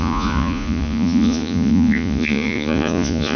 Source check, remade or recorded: remade